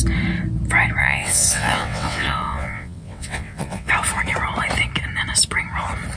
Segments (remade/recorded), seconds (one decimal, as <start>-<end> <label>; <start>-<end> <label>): 0.0-1.0 recorded; 1.0-3.9 remade; 3.9-6.2 recorded